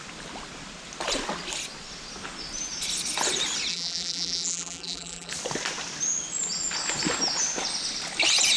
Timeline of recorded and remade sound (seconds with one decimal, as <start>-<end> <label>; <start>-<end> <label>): 0.0-3.7 recorded; 3.7-5.3 remade; 5.3-8.6 recorded